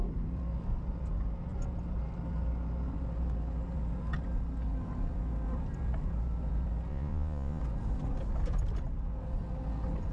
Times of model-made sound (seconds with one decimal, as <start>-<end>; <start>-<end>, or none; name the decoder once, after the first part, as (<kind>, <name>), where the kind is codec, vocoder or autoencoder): 6.9-7.6 (vocoder, Vocos)